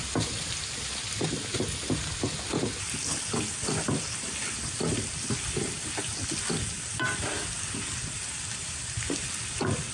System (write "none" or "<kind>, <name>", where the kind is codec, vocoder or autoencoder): none